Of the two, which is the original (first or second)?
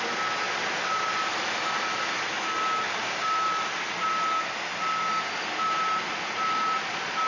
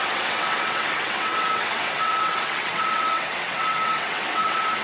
first